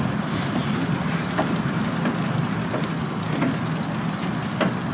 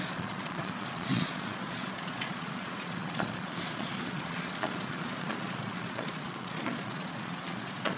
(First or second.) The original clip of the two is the first